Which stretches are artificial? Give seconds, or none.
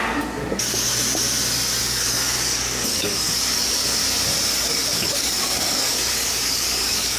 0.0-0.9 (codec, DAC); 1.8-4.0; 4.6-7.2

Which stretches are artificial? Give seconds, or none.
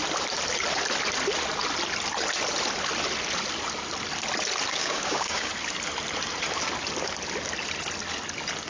4.7-5.5 (codec, DAC)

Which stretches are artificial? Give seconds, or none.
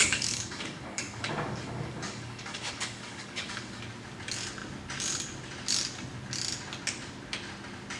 0.0-3.8 (codec, DAC)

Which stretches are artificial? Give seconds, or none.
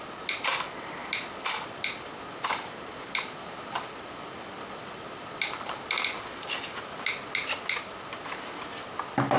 none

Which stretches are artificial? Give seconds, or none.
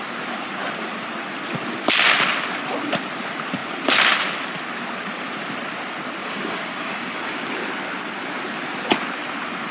6.2-7.5 (codec, DAC)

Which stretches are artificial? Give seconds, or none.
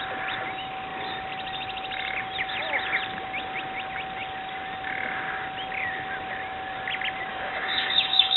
7.3-8.4 (codec, DAC)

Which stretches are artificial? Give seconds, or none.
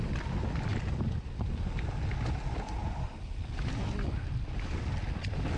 none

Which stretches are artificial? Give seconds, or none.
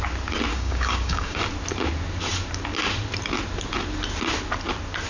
0.5-1.4 (codec, DAC)